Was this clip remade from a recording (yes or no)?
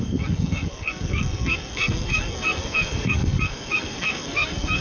yes